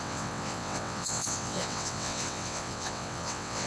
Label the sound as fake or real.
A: fake